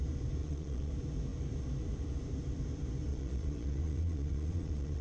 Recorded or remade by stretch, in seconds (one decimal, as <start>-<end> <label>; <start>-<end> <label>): 0.0-0.4 recorded; 0.4-0.9 remade; 0.9-3.1 recorded; 3.1-5.0 remade